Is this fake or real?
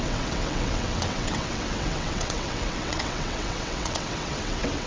fake